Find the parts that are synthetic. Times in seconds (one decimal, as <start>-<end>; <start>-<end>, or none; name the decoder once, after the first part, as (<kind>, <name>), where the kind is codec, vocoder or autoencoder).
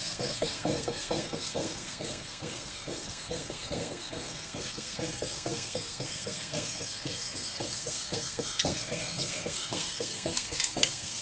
0.0-11.2 (codec, SNAC)